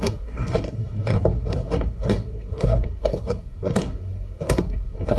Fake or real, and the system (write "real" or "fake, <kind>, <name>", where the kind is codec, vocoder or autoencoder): fake, codec, SNAC